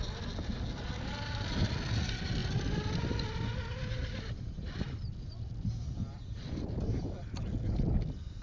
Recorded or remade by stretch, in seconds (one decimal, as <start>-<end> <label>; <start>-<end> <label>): 0.0-8.4 recorded

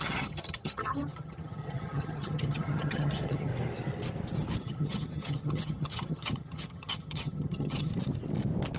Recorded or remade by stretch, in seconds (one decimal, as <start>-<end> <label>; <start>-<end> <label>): 0.0-3.5 remade; 3.5-4.6 recorded; 4.6-7.9 remade; 7.9-8.8 recorded

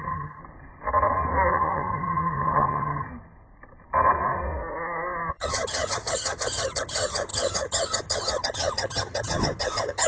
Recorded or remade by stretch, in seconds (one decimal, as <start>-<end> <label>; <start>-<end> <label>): 0.0-0.4 remade; 0.4-1.5 recorded; 1.5-3.1 remade; 3.1-5.3 recorded; 5.3-10.1 remade

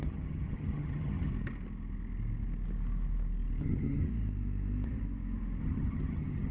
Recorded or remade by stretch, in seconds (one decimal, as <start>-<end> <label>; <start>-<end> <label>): 0.0-1.3 remade; 1.3-3.6 recorded; 3.6-4.1 remade; 4.1-5.6 recorded; 5.6-6.5 remade